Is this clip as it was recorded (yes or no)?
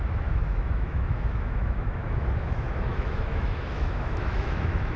no